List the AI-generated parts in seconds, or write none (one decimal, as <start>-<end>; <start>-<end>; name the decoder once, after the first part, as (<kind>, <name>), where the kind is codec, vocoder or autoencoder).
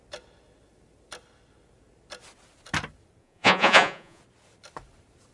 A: 3.2-4.2 (vocoder, Vocos)